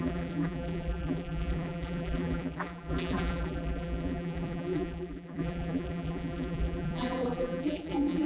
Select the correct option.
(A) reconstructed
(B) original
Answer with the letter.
A